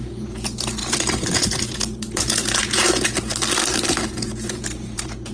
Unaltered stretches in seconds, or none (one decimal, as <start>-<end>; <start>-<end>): 3.3-4.1